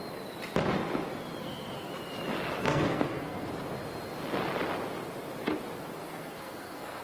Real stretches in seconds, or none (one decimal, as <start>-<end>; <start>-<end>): 0.0-1.4; 1.9-2.6; 3.5-6.0